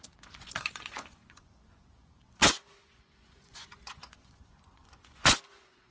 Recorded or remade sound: remade